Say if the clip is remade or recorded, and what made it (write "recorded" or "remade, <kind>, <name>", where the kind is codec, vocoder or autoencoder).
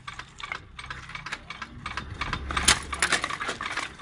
recorded